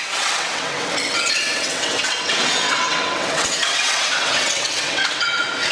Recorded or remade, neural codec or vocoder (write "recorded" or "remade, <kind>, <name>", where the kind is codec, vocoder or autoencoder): remade, vocoder, WaveNeXt